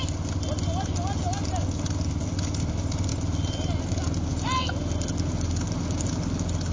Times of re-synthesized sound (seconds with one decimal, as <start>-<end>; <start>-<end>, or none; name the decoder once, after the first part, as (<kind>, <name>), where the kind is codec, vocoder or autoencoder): none